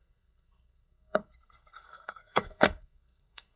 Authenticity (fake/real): fake